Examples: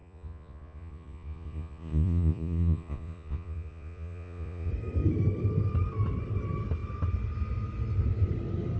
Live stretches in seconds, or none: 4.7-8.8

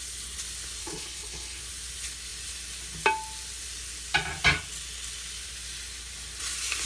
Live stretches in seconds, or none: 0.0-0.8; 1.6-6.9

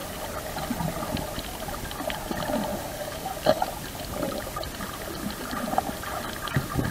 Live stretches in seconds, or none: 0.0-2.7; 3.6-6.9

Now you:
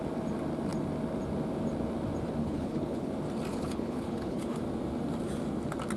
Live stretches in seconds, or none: 0.0-2.4; 3.1-3.5; 4.6-6.0

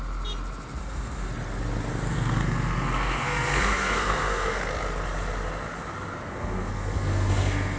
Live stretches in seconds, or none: 0.0-0.8; 1.3-2.1; 4.6-6.3

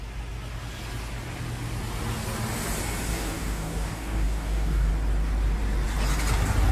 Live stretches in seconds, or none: 0.0-3.1; 4.9-6.7

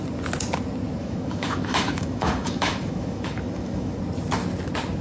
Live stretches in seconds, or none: 0.0-1.0; 4.0-5.0